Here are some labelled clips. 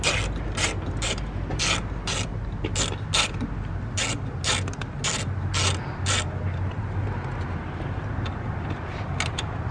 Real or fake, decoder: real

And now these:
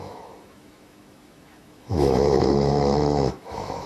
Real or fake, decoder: fake, autoencoder, DAC-VAE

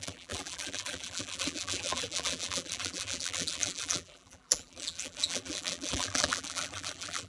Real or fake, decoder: fake, vocoder, BigVGAN v2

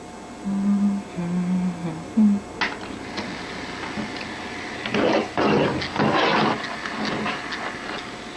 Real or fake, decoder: real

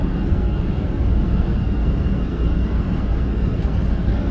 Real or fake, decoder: fake, codec, SNAC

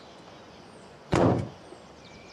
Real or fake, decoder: fake, vocoder, Vocos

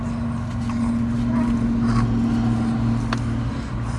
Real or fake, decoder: real